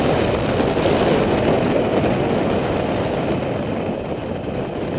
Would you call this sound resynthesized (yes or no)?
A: no